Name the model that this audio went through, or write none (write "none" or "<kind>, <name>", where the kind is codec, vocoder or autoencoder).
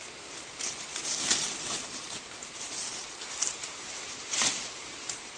vocoder, BigVGAN v2